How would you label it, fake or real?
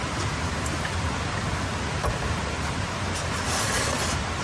real